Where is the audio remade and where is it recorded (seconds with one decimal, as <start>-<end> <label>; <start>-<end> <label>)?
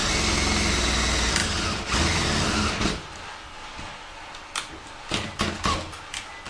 0.0-6.5 recorded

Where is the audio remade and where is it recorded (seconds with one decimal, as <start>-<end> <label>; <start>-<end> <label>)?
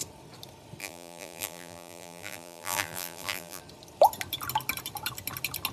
0.0-0.8 recorded; 0.8-3.6 remade; 3.6-5.7 recorded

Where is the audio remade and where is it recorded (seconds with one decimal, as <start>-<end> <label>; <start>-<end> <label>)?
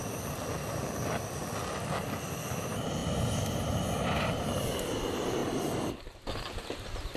0.0-7.2 recorded